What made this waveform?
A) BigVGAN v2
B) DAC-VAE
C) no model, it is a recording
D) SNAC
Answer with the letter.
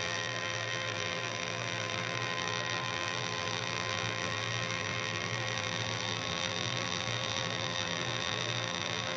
A